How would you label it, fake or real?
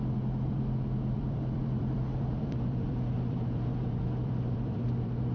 fake